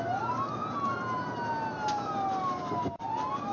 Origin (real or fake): real